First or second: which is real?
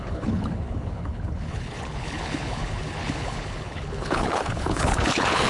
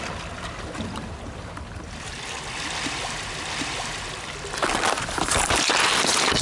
second